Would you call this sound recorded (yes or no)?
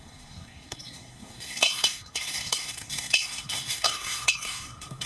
no